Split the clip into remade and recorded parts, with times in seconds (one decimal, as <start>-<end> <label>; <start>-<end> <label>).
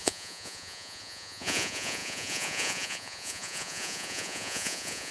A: 0.0-5.1 remade